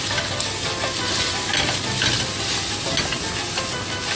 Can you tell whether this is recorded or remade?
recorded